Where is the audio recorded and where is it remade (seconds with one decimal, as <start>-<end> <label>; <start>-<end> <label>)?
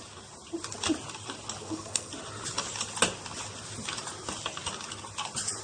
0.0-1.6 recorded; 1.6-2.1 remade; 2.1-5.6 recorded